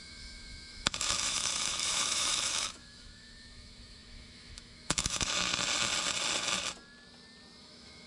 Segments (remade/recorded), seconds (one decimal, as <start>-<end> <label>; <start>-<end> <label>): 0.0-5.5 remade; 5.5-7.6 recorded; 7.6-8.1 remade